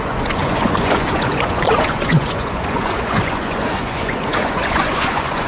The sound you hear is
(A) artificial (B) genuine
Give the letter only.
A